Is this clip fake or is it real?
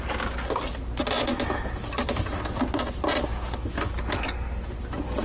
real